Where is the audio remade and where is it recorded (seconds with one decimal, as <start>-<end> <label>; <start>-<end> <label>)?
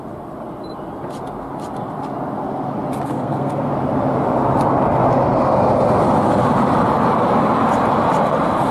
0.0-3.1 recorded; 3.1-3.7 remade; 3.7-8.7 recorded